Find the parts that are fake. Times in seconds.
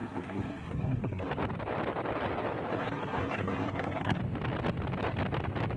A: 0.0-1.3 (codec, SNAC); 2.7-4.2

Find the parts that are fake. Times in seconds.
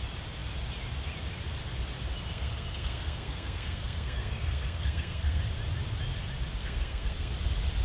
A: 2.3-5.4 (codec, SNAC); 6.6-7.3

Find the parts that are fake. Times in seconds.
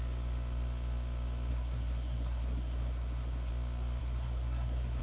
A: 1.5-3.5 (codec, SNAC); 4.0-5.0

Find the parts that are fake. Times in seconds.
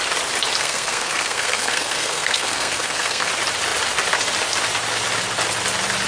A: 0.6-3.3 (codec, SNAC)